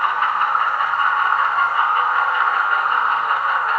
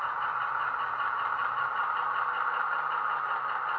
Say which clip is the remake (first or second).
first